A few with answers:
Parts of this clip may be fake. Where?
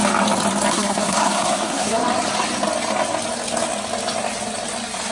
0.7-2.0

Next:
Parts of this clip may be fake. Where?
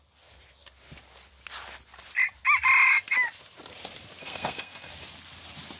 4.2-4.9